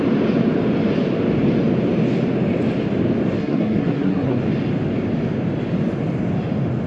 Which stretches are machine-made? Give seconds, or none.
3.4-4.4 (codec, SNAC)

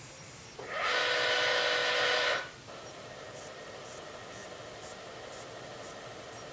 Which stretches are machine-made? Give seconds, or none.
none

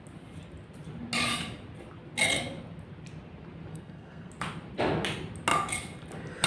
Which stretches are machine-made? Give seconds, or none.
3.7-4.3 (codec, SNAC)

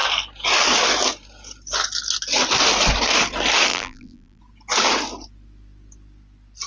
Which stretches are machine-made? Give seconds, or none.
3.7-4.4 (vocoder, BigVGAN v2)